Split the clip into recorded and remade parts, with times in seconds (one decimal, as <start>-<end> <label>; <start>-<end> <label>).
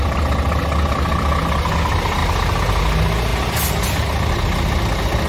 0.0-5.3 recorded